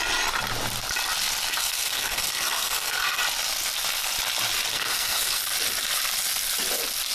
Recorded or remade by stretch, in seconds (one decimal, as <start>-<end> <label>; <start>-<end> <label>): 0.0-1.5 recorded; 1.5-3.2 remade; 3.2-4.7 recorded; 4.7-5.4 remade; 5.4-7.1 recorded

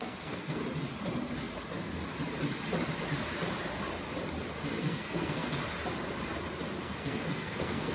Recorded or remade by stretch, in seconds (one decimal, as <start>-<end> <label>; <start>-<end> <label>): 0.0-0.6 remade; 0.6-4.8 recorded; 4.8-5.6 remade; 5.6-6.8 recorded; 6.8-7.9 remade

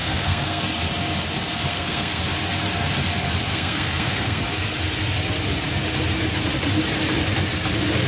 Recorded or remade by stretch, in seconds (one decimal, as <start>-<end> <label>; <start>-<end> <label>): 0.0-0.6 remade; 0.6-1.7 recorded; 1.7-2.2 remade; 2.2-3.5 recorded; 3.5-4.4 remade; 4.4-8.1 recorded

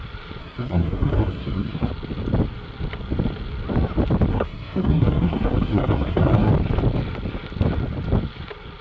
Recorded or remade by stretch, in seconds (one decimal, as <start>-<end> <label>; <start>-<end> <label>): 0.0-0.4 recorded; 0.4-1.9 remade; 1.9-4.3 recorded; 4.3-6.5 remade; 6.5-8.8 recorded

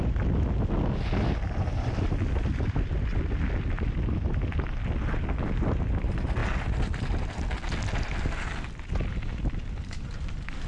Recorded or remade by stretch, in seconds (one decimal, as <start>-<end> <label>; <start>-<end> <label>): 0.0-10.7 recorded

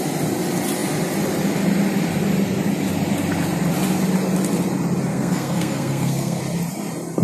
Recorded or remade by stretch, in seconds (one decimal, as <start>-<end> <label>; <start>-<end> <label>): 0.0-5.1 recorded; 5.1-6.4 remade; 6.4-7.2 recorded

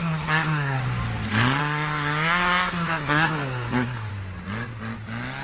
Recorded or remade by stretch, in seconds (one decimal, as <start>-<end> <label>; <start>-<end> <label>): 0.0-0.8 remade; 0.8-1.6 recorded; 1.6-4.1 remade; 4.1-5.4 recorded

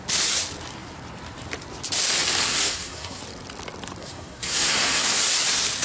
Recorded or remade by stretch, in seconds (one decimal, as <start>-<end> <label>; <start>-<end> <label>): 0.0-2.5 recorded; 2.5-3.2 remade; 3.2-4.0 recorded; 4.0-5.0 remade; 5.0-5.8 recorded